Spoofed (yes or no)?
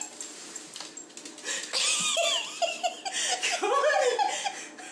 no